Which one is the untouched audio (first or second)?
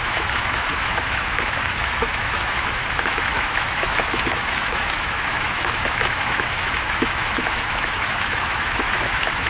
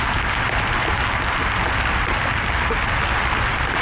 second